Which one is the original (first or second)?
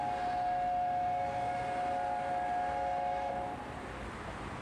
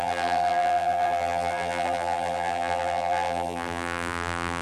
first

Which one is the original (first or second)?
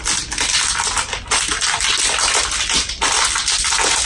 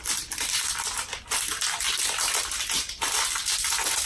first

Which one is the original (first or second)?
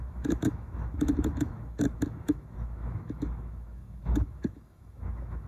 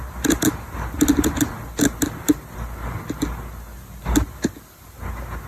second